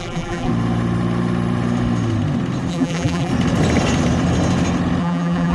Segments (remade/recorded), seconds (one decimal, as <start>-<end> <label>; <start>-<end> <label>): 0.0-0.5 remade; 0.5-2.7 recorded; 2.7-3.3 remade; 3.3-5.0 recorded; 5.0-5.5 remade